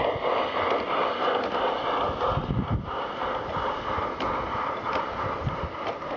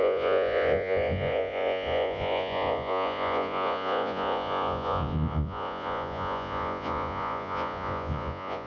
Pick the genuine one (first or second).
first